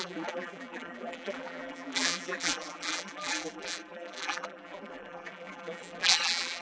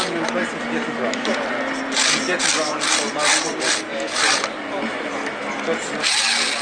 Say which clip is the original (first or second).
second